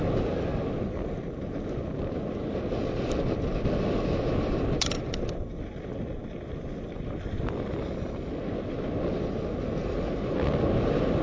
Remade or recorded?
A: recorded